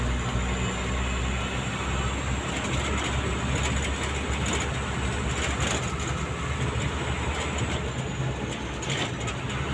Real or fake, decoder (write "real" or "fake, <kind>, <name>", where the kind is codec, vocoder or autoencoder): real